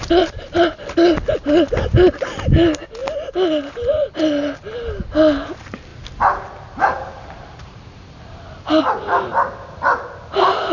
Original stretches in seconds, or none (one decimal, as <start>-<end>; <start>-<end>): 0.0-5.9; 8.8-10.7